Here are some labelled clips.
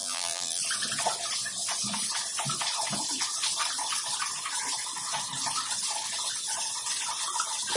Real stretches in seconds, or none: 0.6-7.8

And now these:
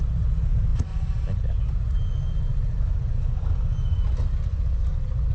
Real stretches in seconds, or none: 0.0-5.3

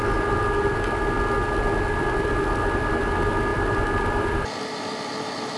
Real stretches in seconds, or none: 0.0-3.5

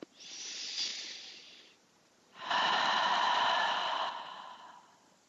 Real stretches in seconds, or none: 0.0-0.9; 3.3-5.3

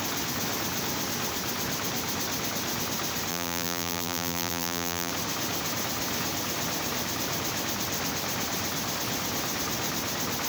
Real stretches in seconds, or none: 0.0-3.3; 5.1-10.5